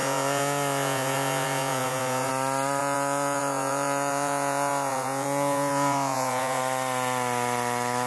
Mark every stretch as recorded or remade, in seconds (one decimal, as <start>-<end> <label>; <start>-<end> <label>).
0.0-2.3 remade; 2.3-2.8 recorded; 2.8-6.6 remade; 6.6-8.1 recorded